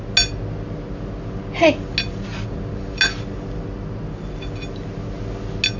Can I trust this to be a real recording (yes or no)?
yes